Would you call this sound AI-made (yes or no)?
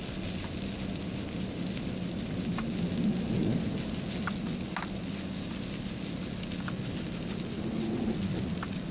no